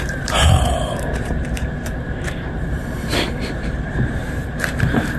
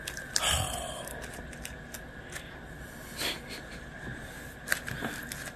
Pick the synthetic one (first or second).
first